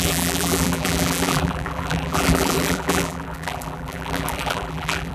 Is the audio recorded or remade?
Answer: remade